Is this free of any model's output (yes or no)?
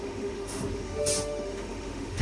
no